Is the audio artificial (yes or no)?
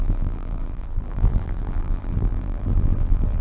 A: yes